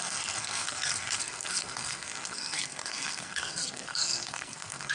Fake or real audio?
fake